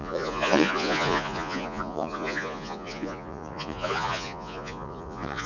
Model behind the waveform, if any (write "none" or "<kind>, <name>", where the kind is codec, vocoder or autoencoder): vocoder, Vocos